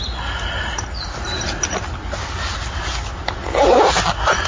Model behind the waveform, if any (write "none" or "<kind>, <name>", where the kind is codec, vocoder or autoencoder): none